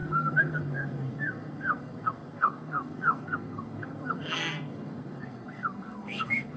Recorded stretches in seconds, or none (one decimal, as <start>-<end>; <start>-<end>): none